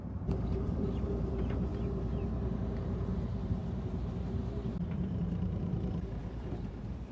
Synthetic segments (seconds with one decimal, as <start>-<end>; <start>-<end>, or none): 0.0-1.7; 2.4-7.1